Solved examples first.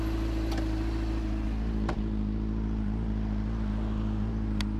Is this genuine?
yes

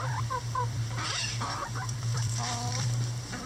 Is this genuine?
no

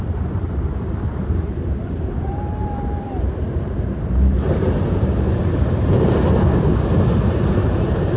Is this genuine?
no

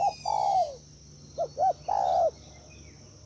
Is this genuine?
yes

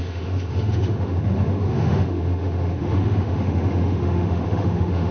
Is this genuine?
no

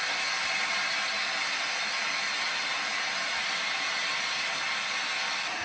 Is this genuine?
yes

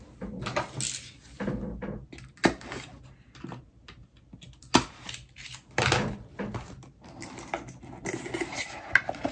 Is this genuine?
yes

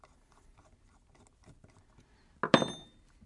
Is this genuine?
yes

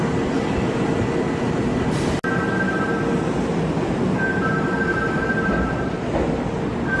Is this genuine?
yes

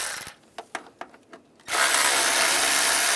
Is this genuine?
yes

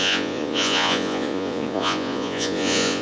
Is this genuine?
no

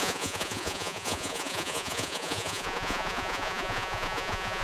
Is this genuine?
no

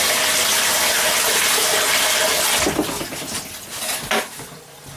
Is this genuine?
yes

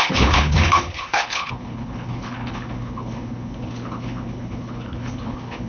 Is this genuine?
no